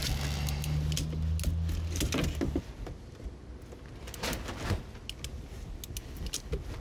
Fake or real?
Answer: real